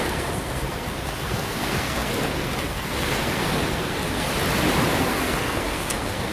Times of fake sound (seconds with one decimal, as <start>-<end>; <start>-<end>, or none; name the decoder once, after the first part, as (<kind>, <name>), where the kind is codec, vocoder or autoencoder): 0.0-4.3 (codec, SNAC); 5.0-6.3